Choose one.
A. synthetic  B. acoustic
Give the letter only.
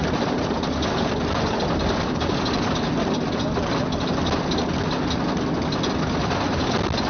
B